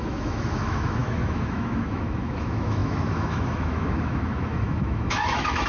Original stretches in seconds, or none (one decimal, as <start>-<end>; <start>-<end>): none